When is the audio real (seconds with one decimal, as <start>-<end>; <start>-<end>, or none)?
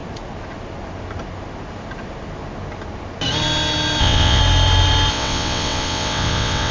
0.0-4.0; 4.4-5.1